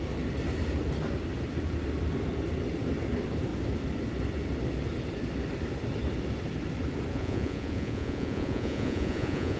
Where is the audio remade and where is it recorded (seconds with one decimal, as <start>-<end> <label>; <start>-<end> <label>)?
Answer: 0.0-7.1 recorded; 7.1-9.6 remade